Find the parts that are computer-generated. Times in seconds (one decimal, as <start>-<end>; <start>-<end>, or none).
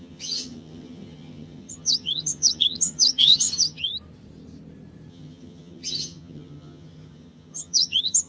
0.0-3.9; 5.1-8.3